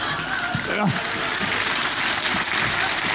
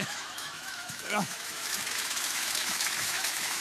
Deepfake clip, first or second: second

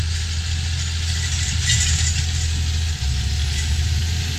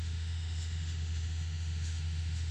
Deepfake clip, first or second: second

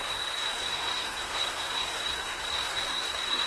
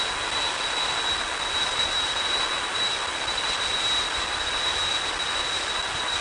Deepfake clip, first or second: first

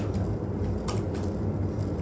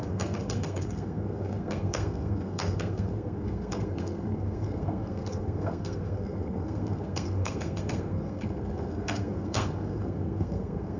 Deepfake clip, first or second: second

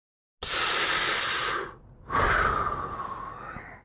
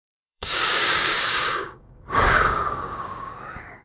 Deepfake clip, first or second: second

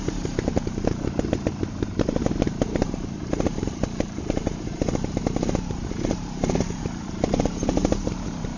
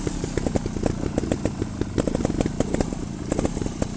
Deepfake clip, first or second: first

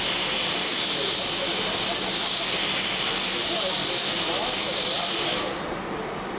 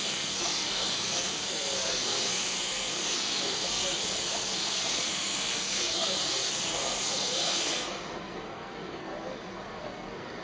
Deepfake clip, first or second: second